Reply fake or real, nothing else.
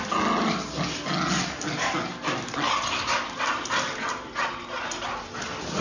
real